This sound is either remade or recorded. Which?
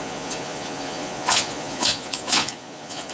remade